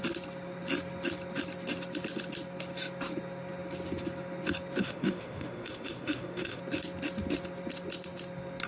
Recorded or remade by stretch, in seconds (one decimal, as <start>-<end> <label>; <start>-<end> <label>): 0.0-4.8 recorded; 4.8-6.6 remade; 6.6-8.7 recorded